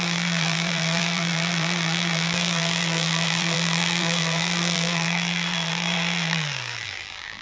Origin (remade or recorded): remade